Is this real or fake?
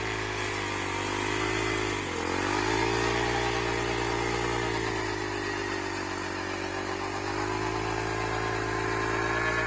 real